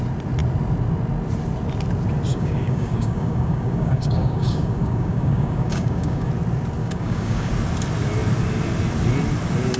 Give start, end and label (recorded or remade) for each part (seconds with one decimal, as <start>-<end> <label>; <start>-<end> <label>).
0.0-2.3 recorded; 2.3-6.3 remade; 6.3-6.8 recorded; 6.8-7.5 remade; 7.5-9.8 recorded

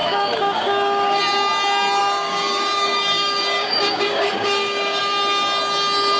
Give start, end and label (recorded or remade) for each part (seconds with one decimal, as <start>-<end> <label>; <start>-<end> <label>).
0.0-1.2 remade; 1.2-2.0 recorded; 2.0-5.0 remade; 5.0-6.2 recorded

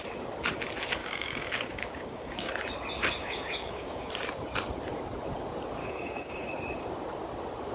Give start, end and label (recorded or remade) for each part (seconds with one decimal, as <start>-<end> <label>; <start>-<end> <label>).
0.0-1.0 recorded; 1.0-2.5 remade; 2.5-3.2 recorded; 3.2-4.1 remade; 4.1-5.8 recorded; 5.8-6.5 remade; 6.5-7.7 recorded

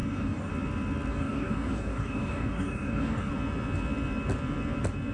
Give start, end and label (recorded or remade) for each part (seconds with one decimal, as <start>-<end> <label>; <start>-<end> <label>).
0.0-0.5 remade; 0.5-1.1 recorded; 1.1-3.3 remade; 3.3-5.1 recorded

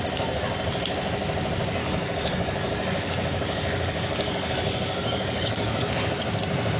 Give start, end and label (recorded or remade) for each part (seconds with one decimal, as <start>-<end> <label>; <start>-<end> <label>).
0.0-1.8 recorded; 1.8-5.9 remade; 5.9-6.8 recorded

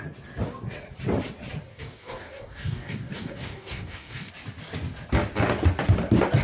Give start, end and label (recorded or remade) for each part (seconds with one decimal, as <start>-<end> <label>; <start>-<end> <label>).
0.0-1.7 recorded; 1.7-4.3 remade; 4.3-6.4 recorded

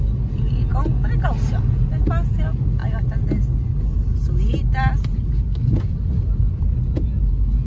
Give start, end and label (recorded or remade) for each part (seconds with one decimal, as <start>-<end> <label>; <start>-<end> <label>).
0.0-7.7 recorded